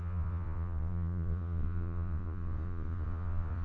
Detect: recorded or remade remade